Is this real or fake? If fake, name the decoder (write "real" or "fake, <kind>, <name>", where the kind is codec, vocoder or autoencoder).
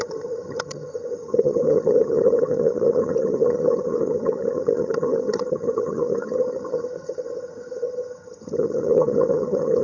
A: fake, vocoder, HiFi-GAN